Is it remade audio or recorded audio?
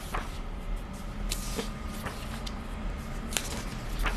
recorded